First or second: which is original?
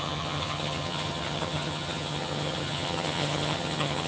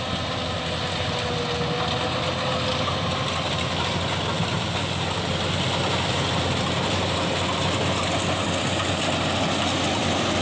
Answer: second